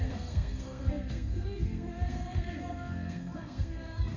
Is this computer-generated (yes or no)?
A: yes